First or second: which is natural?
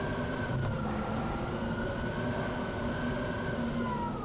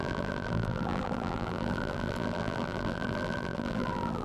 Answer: first